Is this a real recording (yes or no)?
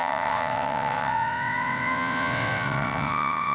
no